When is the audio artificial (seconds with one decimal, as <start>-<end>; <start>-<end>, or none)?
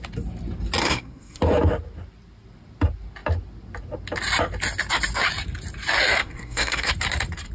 0.8-1.4; 6.2-6.9